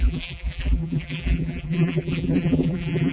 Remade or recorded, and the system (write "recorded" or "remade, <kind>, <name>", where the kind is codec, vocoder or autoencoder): remade, vocoder, BigVGAN v2